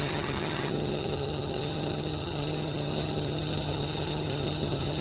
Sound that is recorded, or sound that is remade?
remade